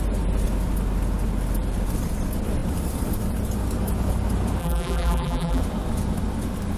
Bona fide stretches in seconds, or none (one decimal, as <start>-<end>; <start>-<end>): 0.0-4.6; 5.6-6.8